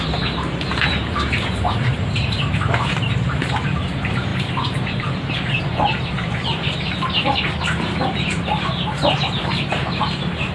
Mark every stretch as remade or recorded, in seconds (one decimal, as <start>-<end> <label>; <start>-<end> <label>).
0.0-10.5 remade